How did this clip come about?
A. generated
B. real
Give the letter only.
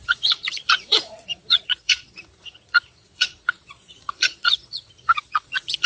A